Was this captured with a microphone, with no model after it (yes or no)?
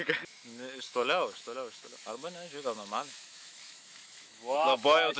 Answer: no